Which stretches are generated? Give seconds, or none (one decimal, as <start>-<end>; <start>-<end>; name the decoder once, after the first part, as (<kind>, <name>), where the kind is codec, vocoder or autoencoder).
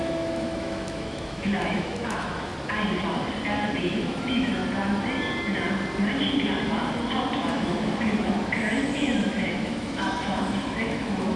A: 0.0-2.5 (autoencoder, DAC-VAE); 3.8-4.6; 7.4-11.4